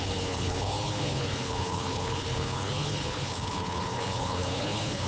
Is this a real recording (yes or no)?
no